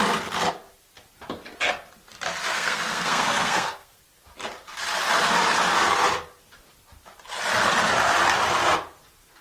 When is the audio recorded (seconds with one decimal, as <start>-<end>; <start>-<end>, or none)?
0.0-2.5; 4.0-9.4